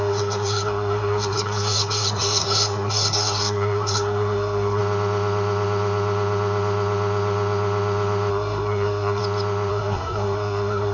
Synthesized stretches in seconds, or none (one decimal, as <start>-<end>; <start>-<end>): 0.0-4.8; 8.3-9.2; 9.7-10.9